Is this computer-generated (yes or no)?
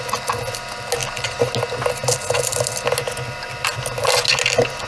no